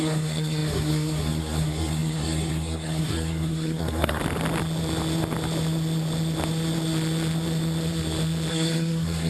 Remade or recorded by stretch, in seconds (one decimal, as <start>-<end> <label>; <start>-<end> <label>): 0.0-4.2 remade; 4.2-8.5 recorded; 8.5-9.3 remade